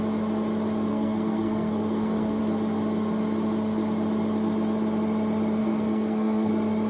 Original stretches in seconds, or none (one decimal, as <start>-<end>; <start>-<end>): 0.0-0.9; 2.4-5.6; 6.5-6.9

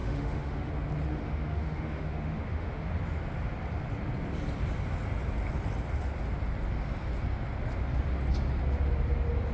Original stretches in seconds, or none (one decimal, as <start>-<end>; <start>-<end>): 0.7-1.1; 2.9-9.5